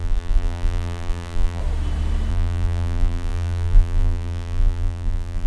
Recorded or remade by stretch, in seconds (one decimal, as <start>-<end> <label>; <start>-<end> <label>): 0.0-1.6 remade; 1.6-2.3 recorded; 2.3-5.5 remade